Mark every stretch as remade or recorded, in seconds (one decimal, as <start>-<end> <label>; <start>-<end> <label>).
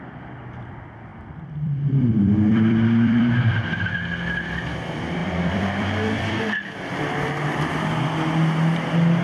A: 0.0-1.1 recorded; 1.1-3.7 remade; 3.7-5.2 recorded; 5.2-6.4 remade; 6.4-9.2 recorded